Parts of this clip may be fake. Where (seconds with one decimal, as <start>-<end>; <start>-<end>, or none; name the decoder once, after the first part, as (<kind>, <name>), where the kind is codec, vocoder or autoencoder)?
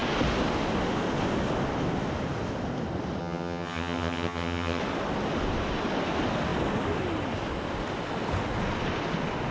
3.2-4.8 (vocoder, HiFi-GAN)